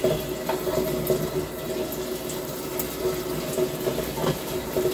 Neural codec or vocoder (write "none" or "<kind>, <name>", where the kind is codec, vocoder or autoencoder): none